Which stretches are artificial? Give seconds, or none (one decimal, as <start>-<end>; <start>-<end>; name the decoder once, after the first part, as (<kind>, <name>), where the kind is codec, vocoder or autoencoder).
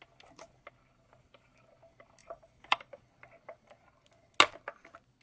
2.2-3.0 (vocoder, BigVGAN v2)